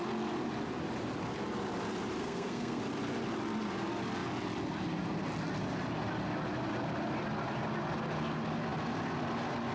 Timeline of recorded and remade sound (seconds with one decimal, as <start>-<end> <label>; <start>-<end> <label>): 0.0-2.2 recorded; 2.2-2.8 remade; 2.8-9.7 recorded